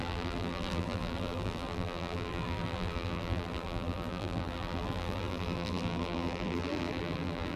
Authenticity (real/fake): fake